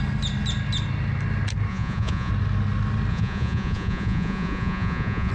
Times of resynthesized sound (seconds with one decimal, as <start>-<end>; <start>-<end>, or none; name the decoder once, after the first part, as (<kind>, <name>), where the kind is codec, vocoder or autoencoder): 1.7-2.3 (vocoder, Vocos); 3.1-5.3